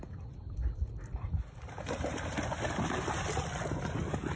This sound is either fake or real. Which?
real